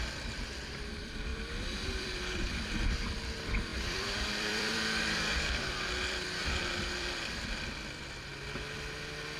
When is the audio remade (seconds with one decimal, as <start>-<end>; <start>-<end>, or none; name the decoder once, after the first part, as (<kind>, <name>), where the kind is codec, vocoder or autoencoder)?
0.0-8.3 (vocoder, BigVGAN v2)